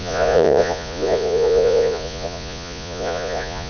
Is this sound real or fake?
fake